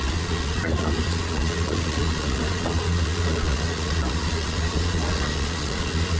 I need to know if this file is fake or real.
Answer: fake